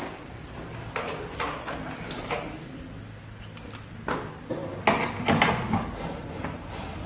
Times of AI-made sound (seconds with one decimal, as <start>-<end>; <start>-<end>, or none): none

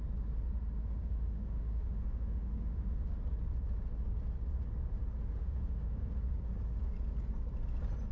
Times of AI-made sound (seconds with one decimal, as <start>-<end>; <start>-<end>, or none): 1.0-3.0; 5.4-6.1